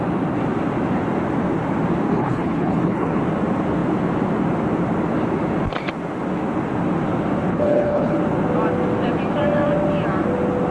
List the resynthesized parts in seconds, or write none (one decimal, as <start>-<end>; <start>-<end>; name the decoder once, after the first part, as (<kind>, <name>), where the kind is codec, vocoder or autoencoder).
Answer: 2.1-3.2 (codec, HILCodec); 7.5-8.2